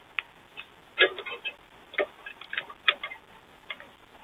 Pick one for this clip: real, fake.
real